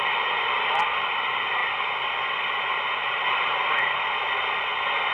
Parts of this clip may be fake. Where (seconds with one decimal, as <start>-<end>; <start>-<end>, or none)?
none